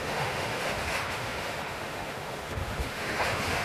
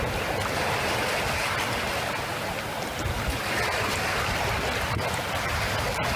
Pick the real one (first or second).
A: second